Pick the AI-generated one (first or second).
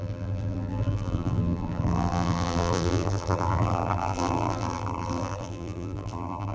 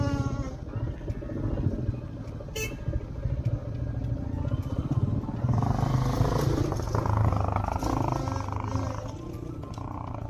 first